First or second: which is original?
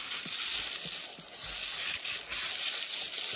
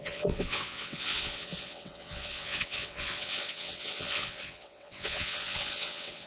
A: first